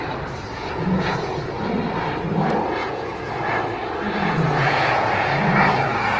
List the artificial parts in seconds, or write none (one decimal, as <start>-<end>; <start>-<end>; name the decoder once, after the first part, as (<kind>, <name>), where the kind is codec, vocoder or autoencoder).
0.5-1.5 (vocoder, Vocos); 2.8-3.4; 4.2-5.4